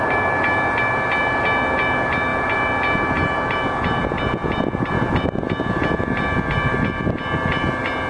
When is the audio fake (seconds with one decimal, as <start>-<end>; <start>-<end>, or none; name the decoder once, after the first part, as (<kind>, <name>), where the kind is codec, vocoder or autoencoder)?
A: none